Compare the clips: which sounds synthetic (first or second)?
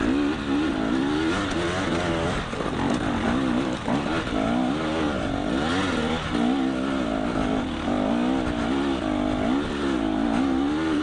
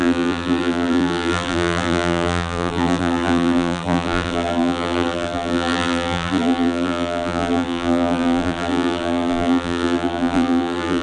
second